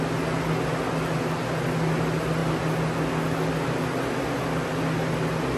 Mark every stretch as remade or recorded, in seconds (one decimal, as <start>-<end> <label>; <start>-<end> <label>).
0.0-5.6 recorded